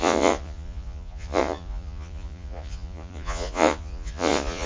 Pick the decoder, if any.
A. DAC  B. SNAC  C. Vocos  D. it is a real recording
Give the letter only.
C